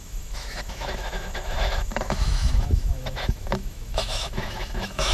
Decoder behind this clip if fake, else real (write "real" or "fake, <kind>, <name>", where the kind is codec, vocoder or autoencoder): fake, autoencoder, DAC-VAE